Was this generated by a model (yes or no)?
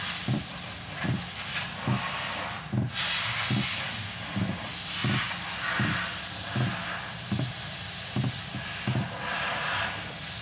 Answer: no